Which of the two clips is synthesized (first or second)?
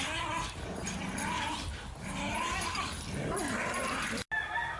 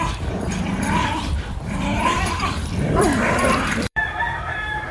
second